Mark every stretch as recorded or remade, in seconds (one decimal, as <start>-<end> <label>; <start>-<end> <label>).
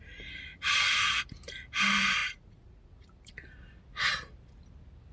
0.0-0.5 recorded; 0.5-1.2 remade; 1.2-2.2 recorded; 2.2-3.3 remade; 3.3-5.1 recorded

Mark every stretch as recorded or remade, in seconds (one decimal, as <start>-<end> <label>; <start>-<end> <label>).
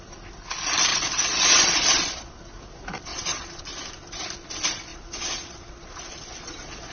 0.0-0.9 recorded; 0.9-2.3 remade; 2.3-3.1 recorded; 3.1-3.6 remade; 3.6-4.9 recorded; 4.9-6.9 remade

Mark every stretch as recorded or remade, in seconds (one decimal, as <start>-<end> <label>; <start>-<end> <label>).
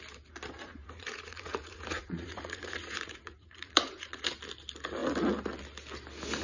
0.0-0.6 recorded; 0.6-4.4 remade; 4.4-6.4 recorded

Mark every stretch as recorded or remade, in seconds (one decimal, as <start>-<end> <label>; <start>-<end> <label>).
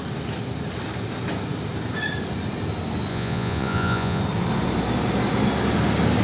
0.0-3.1 recorded; 3.1-4.2 remade; 4.2-6.2 recorded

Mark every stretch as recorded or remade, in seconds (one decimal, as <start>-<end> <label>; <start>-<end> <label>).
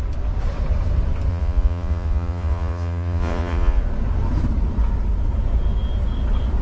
0.0-1.3 recorded; 1.3-3.8 remade; 3.8-6.6 recorded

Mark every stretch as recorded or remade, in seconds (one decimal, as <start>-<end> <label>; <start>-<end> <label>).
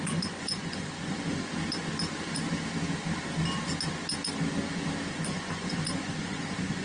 0.0-1.5 remade; 1.5-5.1 recorded; 5.1-6.8 remade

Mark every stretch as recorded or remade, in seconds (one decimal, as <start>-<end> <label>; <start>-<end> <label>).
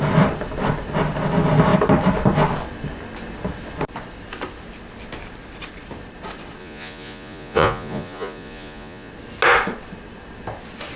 0.0-6.6 recorded; 6.6-9.1 remade; 9.1-11.0 recorded